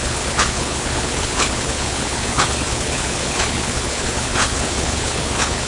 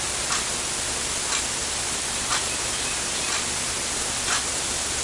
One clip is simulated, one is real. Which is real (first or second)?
second